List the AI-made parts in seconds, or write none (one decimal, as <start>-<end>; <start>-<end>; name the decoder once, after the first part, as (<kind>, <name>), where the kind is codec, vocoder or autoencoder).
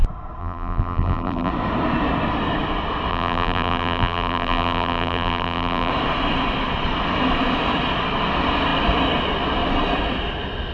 0.4-1.5 (vocoder, BigVGAN v2); 3.1-5.9